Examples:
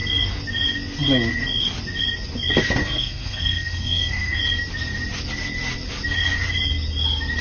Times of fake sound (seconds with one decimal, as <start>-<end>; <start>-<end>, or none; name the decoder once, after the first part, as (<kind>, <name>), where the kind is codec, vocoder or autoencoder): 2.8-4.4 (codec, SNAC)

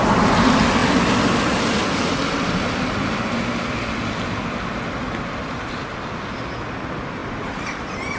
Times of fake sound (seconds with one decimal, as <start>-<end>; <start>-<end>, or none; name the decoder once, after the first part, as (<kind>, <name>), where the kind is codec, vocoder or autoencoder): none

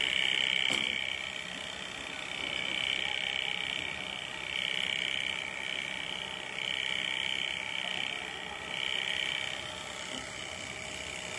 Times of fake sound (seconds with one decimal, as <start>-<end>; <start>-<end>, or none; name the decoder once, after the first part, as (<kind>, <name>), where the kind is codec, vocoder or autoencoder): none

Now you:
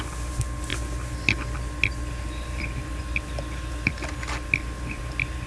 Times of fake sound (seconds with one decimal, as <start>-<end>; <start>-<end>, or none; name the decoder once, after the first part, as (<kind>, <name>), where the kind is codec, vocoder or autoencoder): none